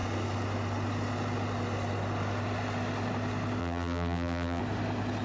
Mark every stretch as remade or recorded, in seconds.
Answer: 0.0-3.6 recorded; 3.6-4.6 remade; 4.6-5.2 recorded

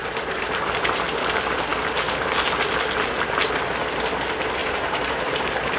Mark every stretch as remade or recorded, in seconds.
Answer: 0.0-0.7 remade; 0.7-4.6 recorded; 4.6-5.1 remade; 5.1-5.8 recorded

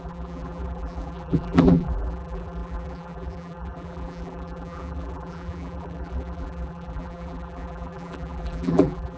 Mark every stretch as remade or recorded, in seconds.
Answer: 0.0-9.2 remade

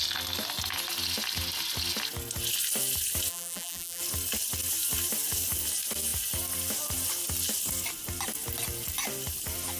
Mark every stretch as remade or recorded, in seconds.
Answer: 0.0-3.3 recorded; 3.3-4.0 remade; 4.0-9.8 recorded